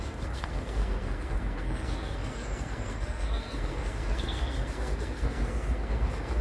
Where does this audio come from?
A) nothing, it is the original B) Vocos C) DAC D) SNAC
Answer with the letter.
D